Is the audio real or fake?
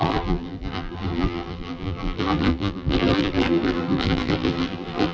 fake